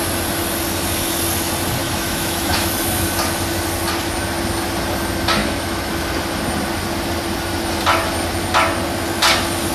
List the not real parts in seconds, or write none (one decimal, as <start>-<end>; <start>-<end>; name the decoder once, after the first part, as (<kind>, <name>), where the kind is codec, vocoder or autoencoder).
1.8-2.7 (autoencoder, DAC-VAE); 5.4-5.9